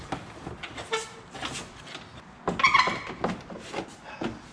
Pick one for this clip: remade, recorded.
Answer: recorded